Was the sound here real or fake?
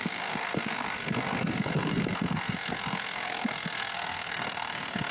fake